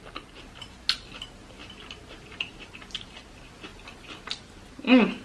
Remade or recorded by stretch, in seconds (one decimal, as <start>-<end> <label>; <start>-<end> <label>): 0.0-3.7 recorded; 3.7-4.2 remade; 4.2-5.2 recorded